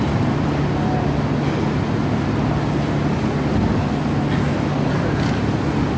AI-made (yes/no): no